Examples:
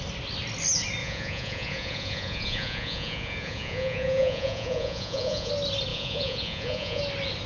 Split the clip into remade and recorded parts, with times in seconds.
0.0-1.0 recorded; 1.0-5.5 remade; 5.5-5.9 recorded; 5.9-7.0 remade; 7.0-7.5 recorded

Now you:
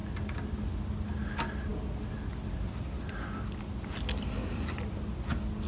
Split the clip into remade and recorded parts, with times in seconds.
0.0-5.7 recorded

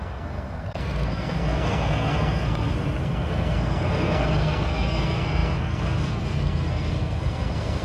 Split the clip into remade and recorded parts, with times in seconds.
0.0-7.8 remade

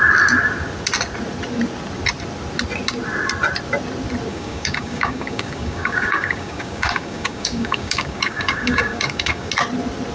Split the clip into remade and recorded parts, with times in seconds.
0.0-4.3 recorded; 4.3-9.5 remade; 9.5-10.1 recorded

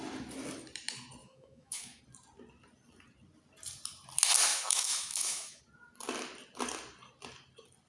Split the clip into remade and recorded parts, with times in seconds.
0.0-1.2 recorded; 1.2-2.0 remade; 2.0-4.5 recorded; 4.5-5.6 remade; 5.6-7.9 recorded

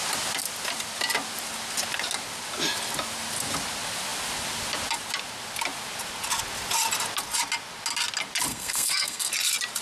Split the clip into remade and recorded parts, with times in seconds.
0.0-8.5 recorded; 8.5-9.3 remade; 9.3-9.8 recorded

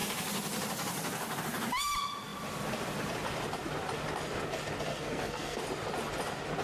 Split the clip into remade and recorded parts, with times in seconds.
0.0-4.9 recorded; 4.9-5.6 remade; 5.6-6.6 recorded